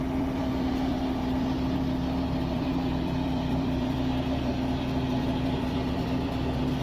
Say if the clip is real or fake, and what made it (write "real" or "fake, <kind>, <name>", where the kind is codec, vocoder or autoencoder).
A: fake, vocoder, BigVGAN v2